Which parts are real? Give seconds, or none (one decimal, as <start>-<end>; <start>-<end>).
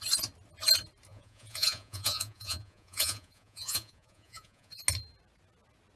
0.0-1.1; 4.7-6.0